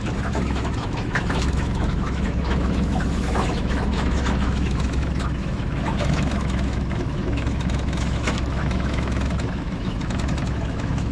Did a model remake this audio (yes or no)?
yes